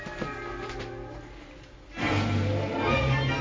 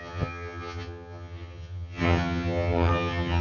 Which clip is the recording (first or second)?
first